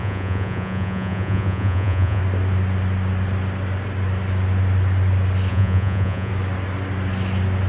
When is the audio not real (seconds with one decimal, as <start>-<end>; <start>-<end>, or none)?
0.0-2.2; 5.5-6.3